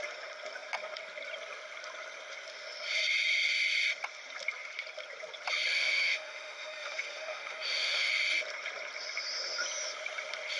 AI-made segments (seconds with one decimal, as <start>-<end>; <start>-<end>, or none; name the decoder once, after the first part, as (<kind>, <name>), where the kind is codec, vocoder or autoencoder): 5.7-8.1 (autoencoder, DAC-VAE)